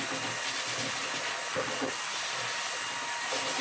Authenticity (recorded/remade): recorded